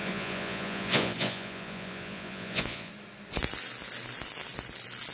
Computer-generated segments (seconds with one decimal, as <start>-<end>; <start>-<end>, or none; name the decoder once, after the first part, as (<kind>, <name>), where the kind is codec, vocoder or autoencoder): 0.0-2.9 (vocoder, Vocos)